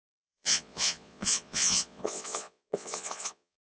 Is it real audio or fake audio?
fake